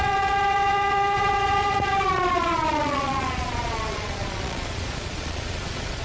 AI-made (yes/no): yes